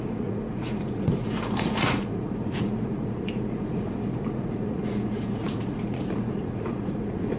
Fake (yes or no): yes